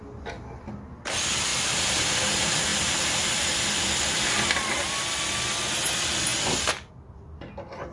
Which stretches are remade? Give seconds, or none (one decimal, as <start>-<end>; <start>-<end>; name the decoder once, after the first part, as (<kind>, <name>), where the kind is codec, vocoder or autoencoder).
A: 1.5-2.1 (vocoder, BigVGAN v2); 2.7-4.7; 6.3-6.9